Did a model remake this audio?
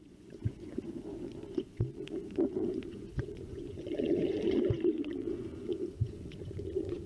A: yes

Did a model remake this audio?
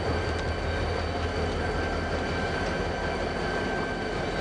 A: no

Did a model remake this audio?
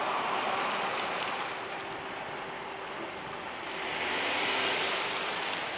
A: no